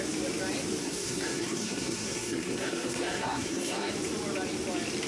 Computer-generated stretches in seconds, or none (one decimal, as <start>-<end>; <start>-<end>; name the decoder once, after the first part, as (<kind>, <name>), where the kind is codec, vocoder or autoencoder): 0.8-3.9 (codec, SNAC)